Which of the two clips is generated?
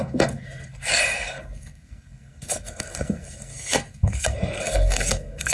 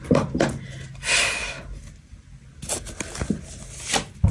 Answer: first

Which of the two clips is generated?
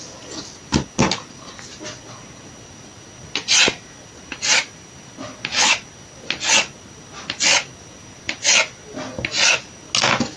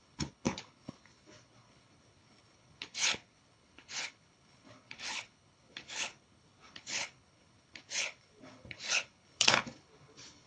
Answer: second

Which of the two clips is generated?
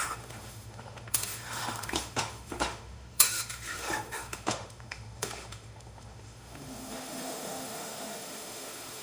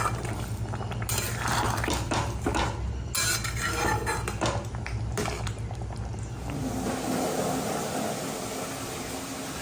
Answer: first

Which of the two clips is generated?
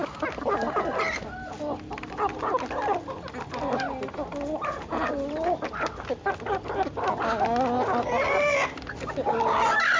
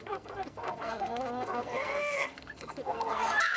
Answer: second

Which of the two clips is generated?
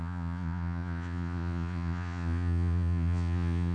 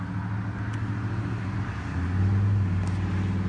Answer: first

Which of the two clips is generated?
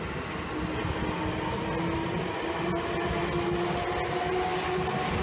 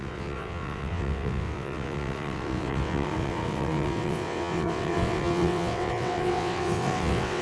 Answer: second